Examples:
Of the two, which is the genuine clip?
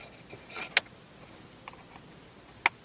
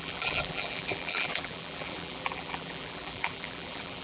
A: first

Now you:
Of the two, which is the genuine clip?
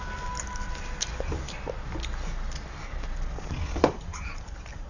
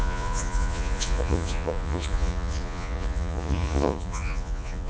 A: first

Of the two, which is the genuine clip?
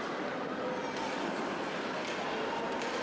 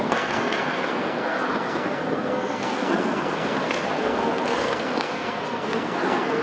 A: first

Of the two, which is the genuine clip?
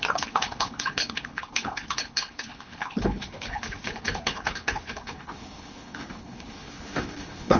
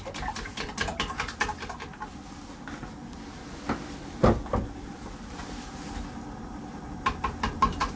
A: second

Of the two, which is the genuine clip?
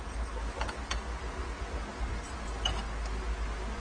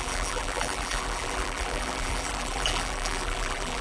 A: first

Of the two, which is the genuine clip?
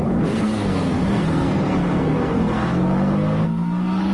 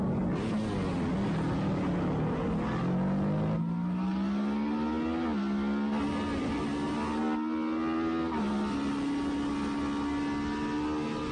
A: second